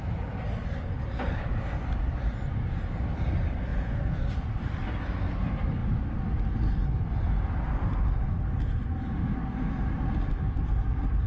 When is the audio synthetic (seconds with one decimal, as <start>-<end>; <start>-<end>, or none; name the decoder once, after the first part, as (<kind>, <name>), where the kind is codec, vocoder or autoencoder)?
3.7-4.2 (vocoder, Vocos)